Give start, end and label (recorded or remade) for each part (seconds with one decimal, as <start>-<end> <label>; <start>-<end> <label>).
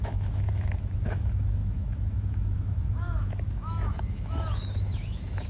0.0-5.5 remade